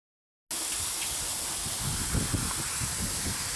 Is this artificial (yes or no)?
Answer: no